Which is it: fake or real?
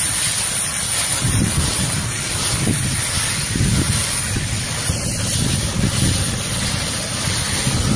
real